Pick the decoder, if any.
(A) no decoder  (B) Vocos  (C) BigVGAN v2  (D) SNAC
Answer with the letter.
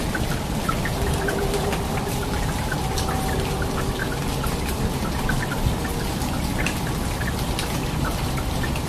A